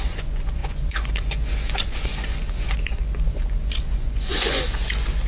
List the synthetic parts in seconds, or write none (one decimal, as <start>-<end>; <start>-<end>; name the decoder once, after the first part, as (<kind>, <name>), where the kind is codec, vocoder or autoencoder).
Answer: 0.0-5.3 (vocoder, Vocos)